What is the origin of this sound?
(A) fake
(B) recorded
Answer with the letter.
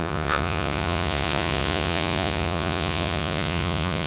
A